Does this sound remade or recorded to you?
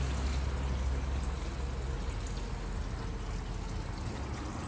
recorded